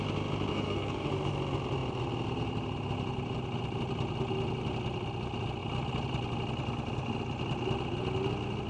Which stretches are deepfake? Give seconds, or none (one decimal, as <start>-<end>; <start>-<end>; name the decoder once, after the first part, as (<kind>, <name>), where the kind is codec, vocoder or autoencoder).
0.5-1.1 (codec, SNAC)